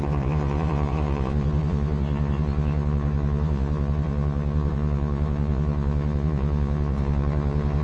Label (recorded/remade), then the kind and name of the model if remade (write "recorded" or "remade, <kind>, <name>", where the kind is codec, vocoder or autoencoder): remade, vocoder, Vocos